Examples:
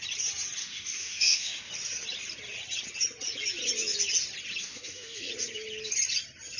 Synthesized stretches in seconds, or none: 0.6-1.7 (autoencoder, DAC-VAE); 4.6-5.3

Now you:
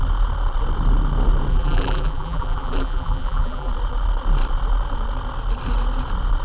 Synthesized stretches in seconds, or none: 1.5-3.7 (vocoder, BigVGAN v2)

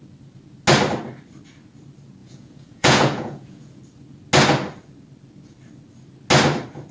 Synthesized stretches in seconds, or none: 2.2-3.8 (vocoder, Vocos)

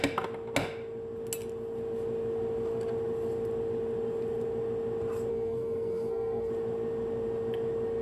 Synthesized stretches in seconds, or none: 5.3-6.5 (codec, SNAC)

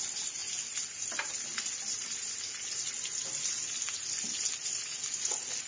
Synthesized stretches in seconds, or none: none

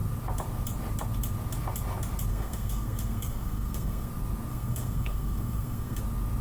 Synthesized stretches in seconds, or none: 2.3-4.1 (codec, SNAC); 4.5-6.0